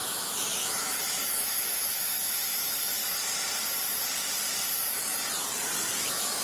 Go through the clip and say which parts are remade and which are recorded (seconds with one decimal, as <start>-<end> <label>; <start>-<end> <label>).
0.0-3.0 remade; 3.0-6.0 recorded; 6.0-6.4 remade